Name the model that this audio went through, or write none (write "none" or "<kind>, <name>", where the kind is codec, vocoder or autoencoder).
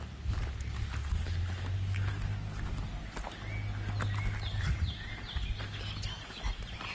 none